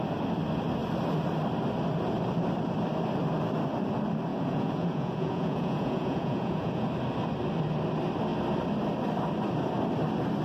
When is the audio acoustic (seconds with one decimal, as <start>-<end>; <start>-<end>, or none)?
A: 0.0-4.3; 6.9-10.4